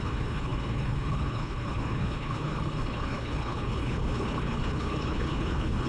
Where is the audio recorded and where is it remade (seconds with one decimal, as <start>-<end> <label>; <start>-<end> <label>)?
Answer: 0.0-5.9 remade